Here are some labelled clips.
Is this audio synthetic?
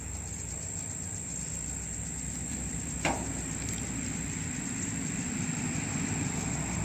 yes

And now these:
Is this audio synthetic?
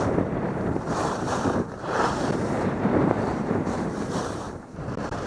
yes